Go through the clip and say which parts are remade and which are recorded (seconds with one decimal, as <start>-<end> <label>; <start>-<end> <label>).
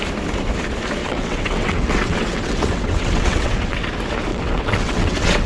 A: 0.0-1.0 recorded; 1.0-3.9 remade; 3.9-4.3 recorded; 4.3-5.5 remade